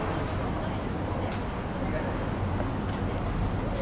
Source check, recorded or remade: recorded